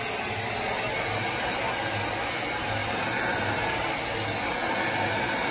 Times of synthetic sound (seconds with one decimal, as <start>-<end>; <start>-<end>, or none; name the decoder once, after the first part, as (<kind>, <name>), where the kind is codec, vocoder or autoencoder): none